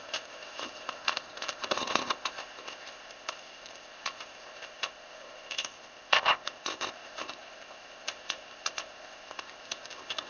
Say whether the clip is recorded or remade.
remade